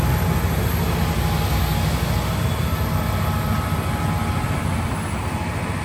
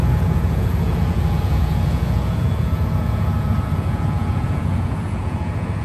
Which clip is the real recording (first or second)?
first